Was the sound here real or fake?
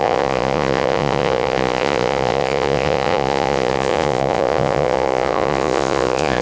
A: fake